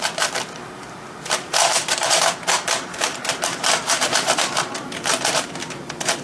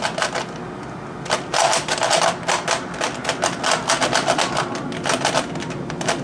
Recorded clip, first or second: second